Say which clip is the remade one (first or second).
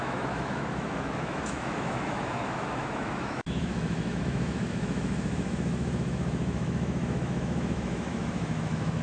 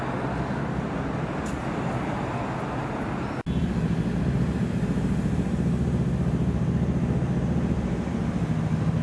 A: first